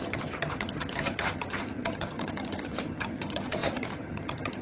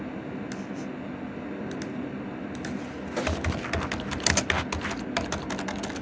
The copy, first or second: first